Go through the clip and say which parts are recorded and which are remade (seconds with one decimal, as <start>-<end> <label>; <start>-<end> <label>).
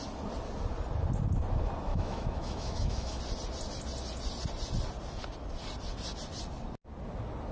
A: 0.0-1.9 recorded; 1.9-3.2 remade; 3.2-7.5 recorded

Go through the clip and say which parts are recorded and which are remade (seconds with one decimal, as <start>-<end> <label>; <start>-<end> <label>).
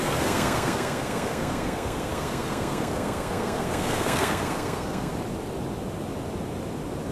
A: 0.0-5.1 remade; 5.1-7.1 recorded